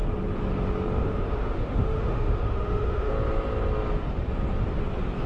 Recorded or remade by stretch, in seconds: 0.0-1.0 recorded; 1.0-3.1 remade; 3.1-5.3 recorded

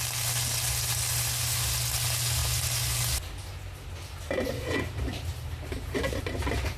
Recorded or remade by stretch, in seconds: 0.0-6.8 recorded

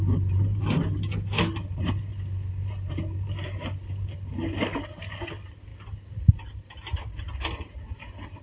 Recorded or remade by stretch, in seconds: 0.0-8.4 recorded

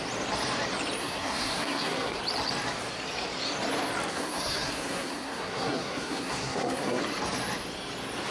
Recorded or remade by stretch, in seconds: 0.0-1.0 recorded; 1.0-2.2 remade; 2.2-4.1 recorded; 4.1-7.0 remade; 7.0-8.3 recorded

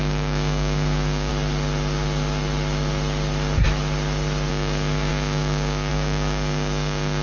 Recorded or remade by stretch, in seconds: 0.0-1.3 remade; 1.3-4.5 recorded; 4.5-7.2 remade

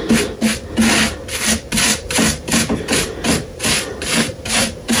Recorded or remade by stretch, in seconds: 0.0-1.9 recorded; 1.9-5.0 remade

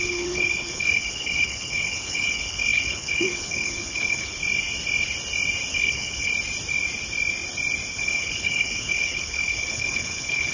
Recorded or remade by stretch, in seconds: 0.0-4.4 remade; 4.4-5.7 recorded; 5.7-6.3 remade; 6.3-7.9 recorded; 7.9-10.5 remade

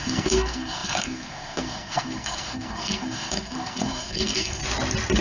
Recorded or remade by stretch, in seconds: 0.0-4.6 remade; 4.6-5.2 recorded